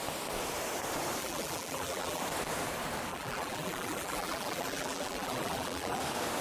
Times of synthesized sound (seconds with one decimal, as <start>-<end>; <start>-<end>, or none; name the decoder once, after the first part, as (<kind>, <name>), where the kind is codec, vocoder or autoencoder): 1.2-2.2 (vocoder, BigVGAN v2); 3.1-6.0